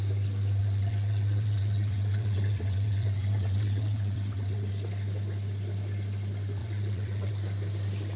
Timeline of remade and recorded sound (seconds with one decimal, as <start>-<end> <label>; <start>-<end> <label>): 0.0-0.6 recorded; 0.6-4.7 remade; 4.7-6.6 recorded; 6.6-7.3 remade; 7.3-8.2 recorded